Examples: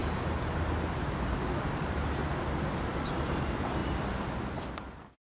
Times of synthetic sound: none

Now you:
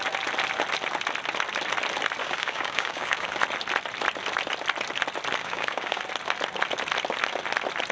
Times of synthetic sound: 2.2-3.4 (codec, DAC); 5.4-6.0

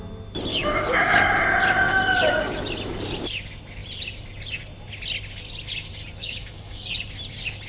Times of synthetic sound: 0.5-1.3 (codec, DAC); 6.2-6.8

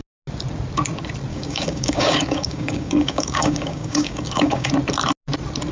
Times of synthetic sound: 1.3-4.7 (codec, DAC)

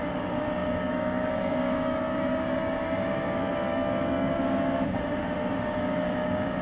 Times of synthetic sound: 0.0-6.6 (codec, DAC)

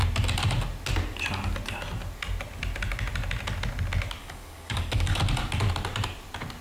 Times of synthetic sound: 4.2-5.2 (codec, DAC)